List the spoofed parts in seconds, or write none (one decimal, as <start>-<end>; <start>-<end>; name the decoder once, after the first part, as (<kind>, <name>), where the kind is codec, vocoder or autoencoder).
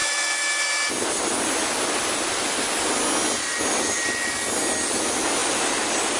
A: none